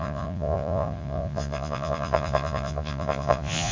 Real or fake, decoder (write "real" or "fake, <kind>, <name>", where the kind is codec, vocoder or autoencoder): fake, vocoder, Vocos